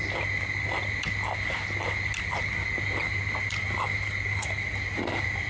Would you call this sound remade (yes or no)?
no